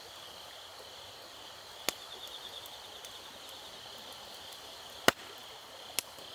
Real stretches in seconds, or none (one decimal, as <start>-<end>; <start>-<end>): 0.0-6.3